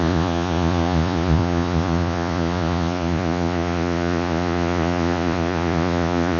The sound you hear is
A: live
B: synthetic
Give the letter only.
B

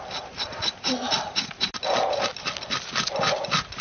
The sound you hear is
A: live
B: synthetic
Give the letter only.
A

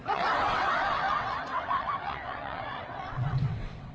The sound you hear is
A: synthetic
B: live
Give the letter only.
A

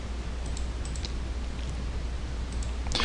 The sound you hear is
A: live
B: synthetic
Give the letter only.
A